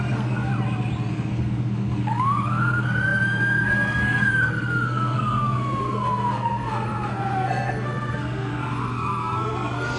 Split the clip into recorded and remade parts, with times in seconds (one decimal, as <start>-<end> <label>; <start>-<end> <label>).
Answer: 0.0-0.5 remade; 0.5-1.1 recorded; 1.1-10.0 remade

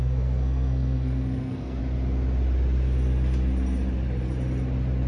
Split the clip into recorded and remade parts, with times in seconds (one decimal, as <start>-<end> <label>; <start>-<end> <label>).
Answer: 0.0-1.8 remade; 1.8-5.1 recorded

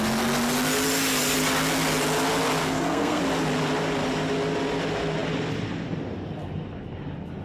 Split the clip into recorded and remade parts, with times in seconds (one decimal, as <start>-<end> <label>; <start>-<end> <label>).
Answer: 0.0-2.6 recorded; 2.6-3.2 remade; 3.2-7.4 recorded

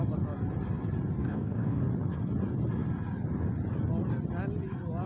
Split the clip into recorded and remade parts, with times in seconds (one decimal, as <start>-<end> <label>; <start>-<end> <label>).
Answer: 0.0-1.2 recorded; 1.2-1.8 remade; 1.8-5.1 recorded

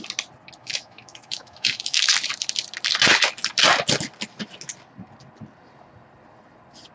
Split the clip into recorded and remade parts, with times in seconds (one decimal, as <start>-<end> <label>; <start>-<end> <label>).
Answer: 0.0-0.6 recorded; 0.6-2.1 remade; 2.1-6.9 recorded

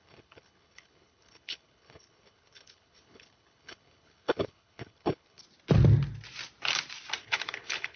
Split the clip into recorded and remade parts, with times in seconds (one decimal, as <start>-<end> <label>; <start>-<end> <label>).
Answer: 0.0-5.4 remade; 5.4-7.2 recorded; 7.2-8.0 remade

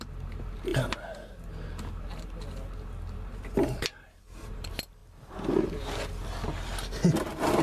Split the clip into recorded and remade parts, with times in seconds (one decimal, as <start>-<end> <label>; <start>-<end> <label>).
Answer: 0.0-7.6 recorded